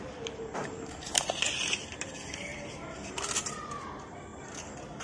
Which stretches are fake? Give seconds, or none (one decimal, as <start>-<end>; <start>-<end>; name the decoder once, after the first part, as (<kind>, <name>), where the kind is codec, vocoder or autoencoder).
0.6-1.5 (vocoder, BigVGAN v2); 2.5-3.3